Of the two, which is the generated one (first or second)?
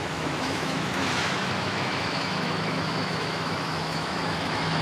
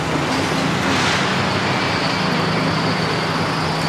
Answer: first